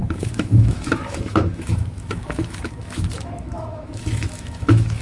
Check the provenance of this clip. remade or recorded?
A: remade